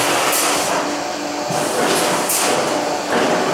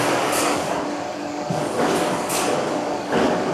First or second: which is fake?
second